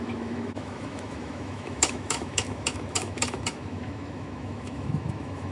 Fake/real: fake